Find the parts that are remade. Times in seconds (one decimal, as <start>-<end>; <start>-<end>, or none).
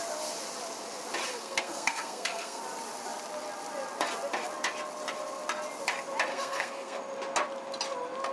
1.3-2.6; 6.3-7.0